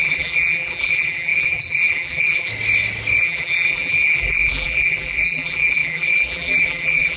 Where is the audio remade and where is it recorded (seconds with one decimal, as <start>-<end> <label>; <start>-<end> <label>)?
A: 0.0-2.5 remade; 2.5-3.2 recorded; 3.2-7.2 remade